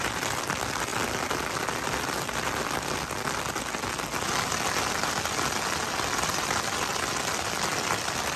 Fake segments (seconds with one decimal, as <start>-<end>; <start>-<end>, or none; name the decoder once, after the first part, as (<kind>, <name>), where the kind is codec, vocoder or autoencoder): none